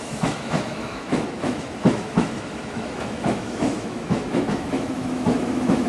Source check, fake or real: fake